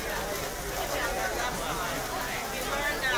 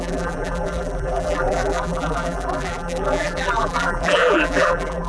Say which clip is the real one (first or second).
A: first